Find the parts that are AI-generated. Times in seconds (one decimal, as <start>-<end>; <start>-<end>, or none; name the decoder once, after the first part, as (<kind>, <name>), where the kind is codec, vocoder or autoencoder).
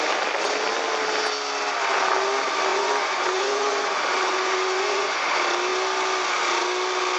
2.7-5.3 (vocoder, Vocos)